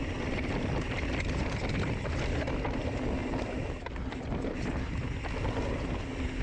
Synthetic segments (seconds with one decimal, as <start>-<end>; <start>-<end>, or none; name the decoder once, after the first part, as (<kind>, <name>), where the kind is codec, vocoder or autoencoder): none